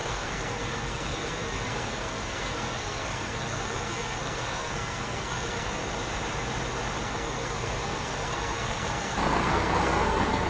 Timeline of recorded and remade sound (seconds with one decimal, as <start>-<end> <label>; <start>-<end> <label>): 0.0-5.8 remade; 5.8-7.0 recorded; 7.0-10.5 remade